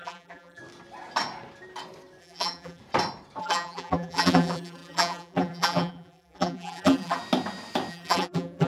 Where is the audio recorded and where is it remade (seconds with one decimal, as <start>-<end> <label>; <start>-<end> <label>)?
0.0-0.6 remade; 0.6-2.2 recorded; 2.2-2.8 remade; 2.8-3.4 recorded; 3.4-7.2 remade; 7.2-7.9 recorded; 7.9-8.7 remade